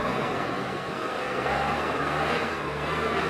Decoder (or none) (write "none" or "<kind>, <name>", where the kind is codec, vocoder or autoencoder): codec, SNAC